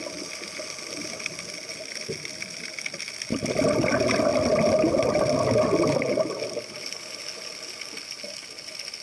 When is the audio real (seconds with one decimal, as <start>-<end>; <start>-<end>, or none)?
0.0-4.3; 5.1-9.0